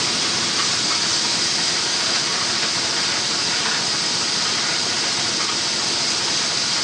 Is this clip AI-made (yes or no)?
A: no